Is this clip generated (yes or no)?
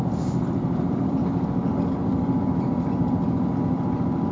yes